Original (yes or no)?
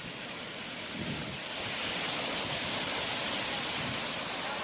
yes